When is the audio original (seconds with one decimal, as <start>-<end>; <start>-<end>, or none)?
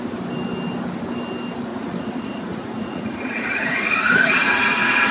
0.0-1.7